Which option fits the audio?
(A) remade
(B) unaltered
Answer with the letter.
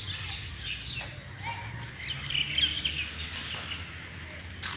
B